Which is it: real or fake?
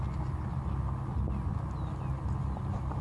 real